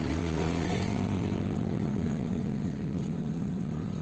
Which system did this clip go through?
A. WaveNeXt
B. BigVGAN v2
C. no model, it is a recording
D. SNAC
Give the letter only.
A